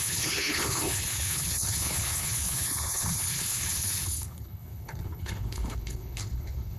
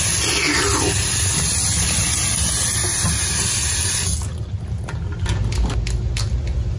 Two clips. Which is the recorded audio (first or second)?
second